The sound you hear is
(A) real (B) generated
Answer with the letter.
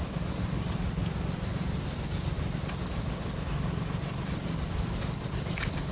A